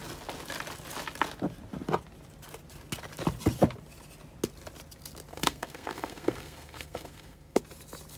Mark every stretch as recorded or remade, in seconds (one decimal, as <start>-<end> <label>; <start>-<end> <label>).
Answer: 0.0-5.3 recorded; 5.3-7.6 remade; 7.6-8.2 recorded